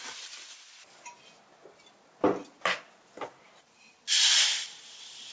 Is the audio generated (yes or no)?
no